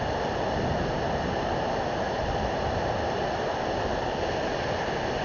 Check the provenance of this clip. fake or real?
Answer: real